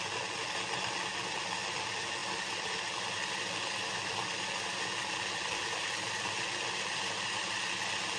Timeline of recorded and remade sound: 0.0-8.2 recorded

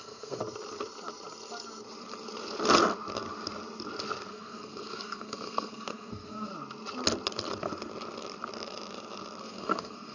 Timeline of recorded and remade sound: 0.0-0.4 remade; 0.4-4.3 recorded; 4.3-6.5 remade; 6.5-9.4 recorded; 9.4-10.1 remade

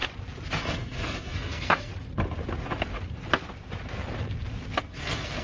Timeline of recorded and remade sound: 0.0-0.6 recorded; 0.6-1.9 remade; 1.9-4.8 recorded; 4.8-5.4 remade

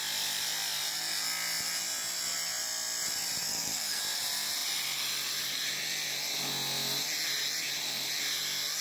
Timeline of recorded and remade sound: 0.0-3.5 recorded; 3.5-4.0 remade; 4.0-8.8 recorded